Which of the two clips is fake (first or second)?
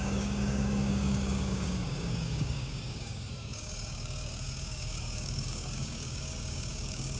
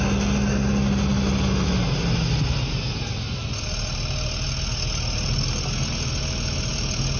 first